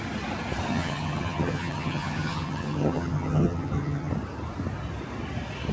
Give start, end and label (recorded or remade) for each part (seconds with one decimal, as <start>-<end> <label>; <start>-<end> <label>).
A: 0.0-0.7 recorded; 0.7-4.1 remade; 4.1-5.7 recorded